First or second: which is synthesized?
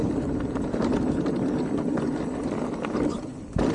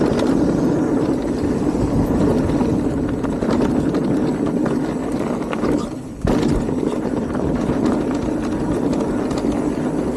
first